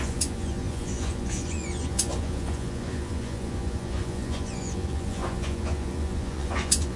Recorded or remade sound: remade